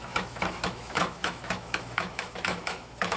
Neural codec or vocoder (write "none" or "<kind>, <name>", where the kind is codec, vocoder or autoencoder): autoencoder, DAC-VAE